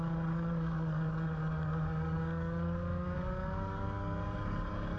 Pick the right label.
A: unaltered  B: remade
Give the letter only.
B